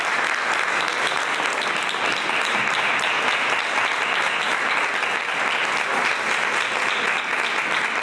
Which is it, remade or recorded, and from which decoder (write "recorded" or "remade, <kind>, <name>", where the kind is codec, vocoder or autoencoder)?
recorded